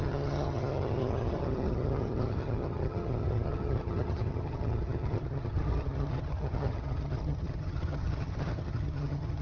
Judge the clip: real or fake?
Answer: fake